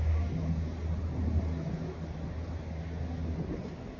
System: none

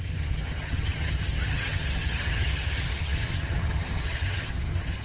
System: vocoder, HiFi-GAN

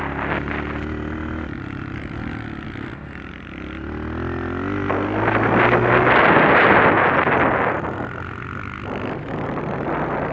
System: none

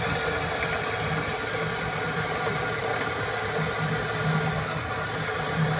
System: none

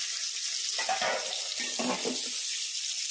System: none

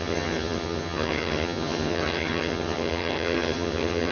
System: vocoder, HiFi-GAN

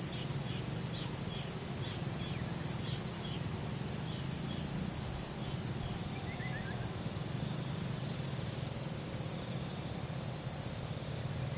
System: none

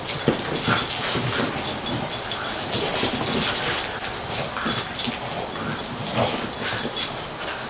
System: none